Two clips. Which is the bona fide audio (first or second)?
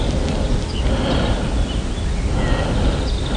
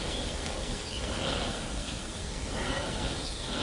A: first